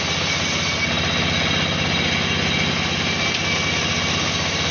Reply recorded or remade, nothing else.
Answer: recorded